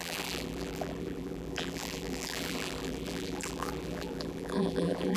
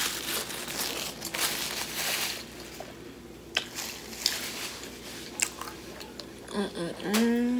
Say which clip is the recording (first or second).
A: second